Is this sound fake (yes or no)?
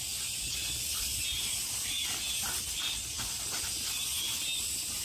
no